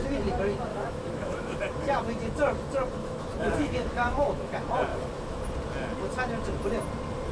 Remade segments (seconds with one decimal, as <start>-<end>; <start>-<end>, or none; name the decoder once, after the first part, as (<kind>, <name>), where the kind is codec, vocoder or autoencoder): 0.7-1.6 (autoencoder, DAC-VAE); 3.0-4.5; 4.9-5.4